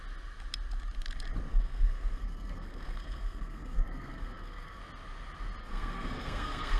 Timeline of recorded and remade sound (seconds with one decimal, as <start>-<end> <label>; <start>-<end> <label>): 0.0-1.5 recorded; 1.5-4.8 remade; 4.8-5.6 recorded; 5.6-6.8 remade